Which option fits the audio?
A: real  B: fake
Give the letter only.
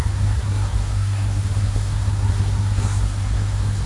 B